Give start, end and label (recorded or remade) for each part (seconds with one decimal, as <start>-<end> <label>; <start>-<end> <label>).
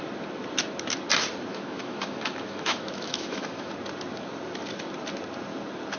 0.0-1.5 recorded; 1.5-3.7 remade; 3.7-6.0 recorded